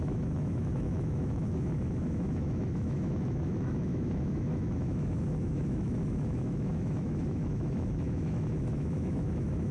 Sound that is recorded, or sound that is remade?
remade